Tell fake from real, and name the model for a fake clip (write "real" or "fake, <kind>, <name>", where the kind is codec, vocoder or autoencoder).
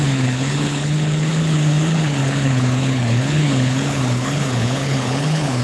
fake, codec, HILCodec